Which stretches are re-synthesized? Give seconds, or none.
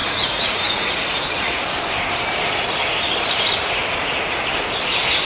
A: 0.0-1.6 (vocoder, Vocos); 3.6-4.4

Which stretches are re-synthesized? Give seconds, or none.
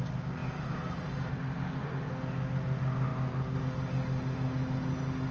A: 1.3-2.1 (autoencoder, DAC-VAE)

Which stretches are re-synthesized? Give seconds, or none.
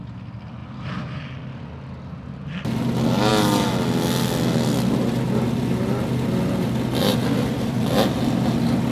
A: 0.6-1.2 (vocoder, BigVGAN v2); 7.1-7.9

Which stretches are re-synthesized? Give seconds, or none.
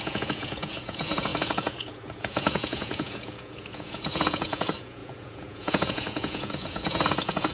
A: 0.0-7.5 (vocoder, Vocos)